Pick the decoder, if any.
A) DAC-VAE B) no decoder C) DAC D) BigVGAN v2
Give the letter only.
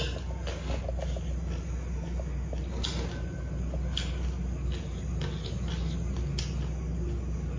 B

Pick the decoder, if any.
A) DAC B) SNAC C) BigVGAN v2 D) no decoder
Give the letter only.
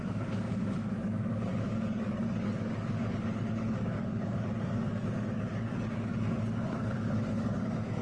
A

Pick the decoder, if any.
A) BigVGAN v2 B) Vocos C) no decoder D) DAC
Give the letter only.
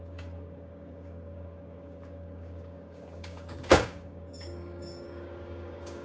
D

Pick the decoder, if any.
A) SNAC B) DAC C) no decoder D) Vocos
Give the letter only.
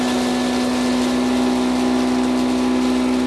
C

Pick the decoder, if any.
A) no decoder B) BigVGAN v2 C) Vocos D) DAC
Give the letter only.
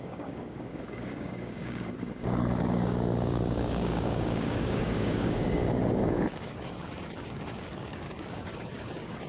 D